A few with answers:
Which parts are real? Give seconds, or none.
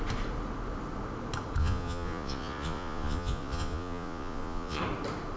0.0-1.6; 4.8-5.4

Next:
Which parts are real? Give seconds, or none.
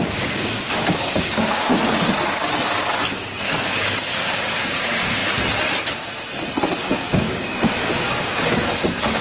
1.7-3.4; 5.2-6.8